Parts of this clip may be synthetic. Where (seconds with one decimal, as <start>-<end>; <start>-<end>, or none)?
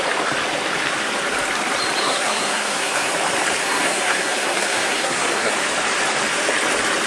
2.0-3.1; 3.6-5.5